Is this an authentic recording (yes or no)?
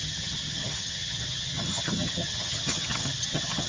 no